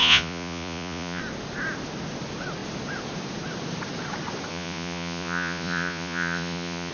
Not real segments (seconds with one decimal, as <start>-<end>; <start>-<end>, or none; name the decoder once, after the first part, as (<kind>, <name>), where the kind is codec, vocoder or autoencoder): 0.0-1.2 (vocoder, Vocos); 4.5-6.9